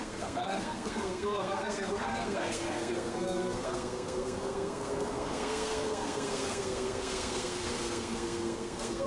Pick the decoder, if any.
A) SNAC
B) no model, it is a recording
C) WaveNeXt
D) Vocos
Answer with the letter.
A